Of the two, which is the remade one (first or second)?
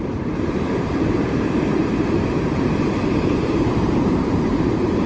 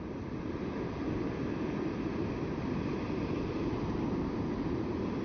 first